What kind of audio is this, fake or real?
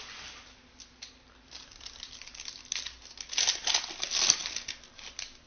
real